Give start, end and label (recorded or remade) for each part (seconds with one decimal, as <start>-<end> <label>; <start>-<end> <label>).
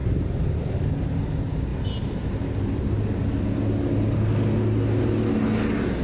0.0-0.7 remade; 0.7-6.0 recorded